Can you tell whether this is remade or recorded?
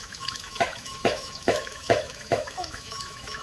remade